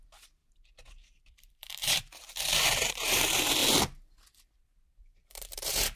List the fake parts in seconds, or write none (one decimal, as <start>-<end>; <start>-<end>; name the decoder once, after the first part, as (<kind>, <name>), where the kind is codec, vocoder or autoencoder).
0.0-3.6 (vocoder, BigVGAN v2); 4.6-6.0